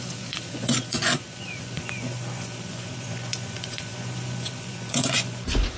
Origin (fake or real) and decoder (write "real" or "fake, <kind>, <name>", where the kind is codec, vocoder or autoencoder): fake, vocoder, Vocos